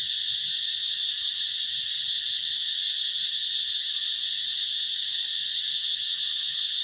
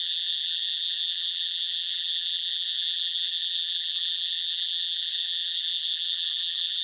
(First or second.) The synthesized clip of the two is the second